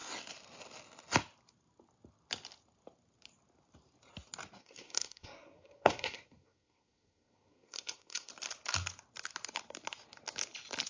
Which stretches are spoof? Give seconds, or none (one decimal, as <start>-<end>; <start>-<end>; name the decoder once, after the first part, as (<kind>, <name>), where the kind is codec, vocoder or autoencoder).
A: 4.6-8.3 (codec, SNAC)